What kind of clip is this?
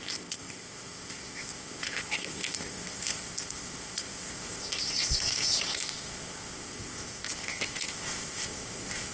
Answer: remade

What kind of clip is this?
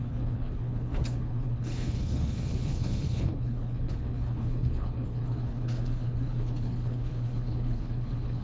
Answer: remade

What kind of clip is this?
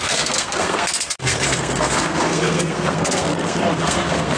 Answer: remade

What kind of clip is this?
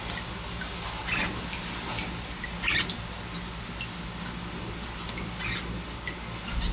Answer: recorded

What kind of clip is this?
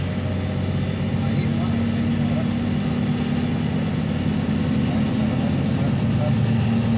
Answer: recorded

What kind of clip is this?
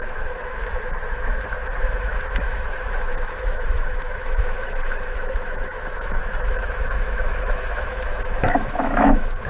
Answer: remade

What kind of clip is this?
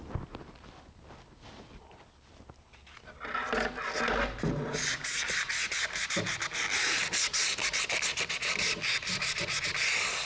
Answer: recorded